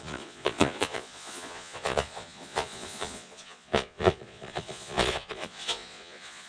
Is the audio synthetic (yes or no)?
yes